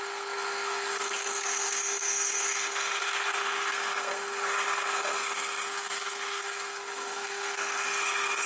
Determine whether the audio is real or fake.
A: fake